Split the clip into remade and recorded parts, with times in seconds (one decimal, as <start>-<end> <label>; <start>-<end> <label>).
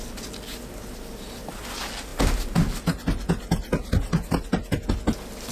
0.0-5.5 recorded